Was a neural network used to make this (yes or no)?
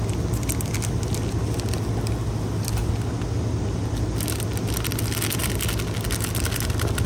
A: no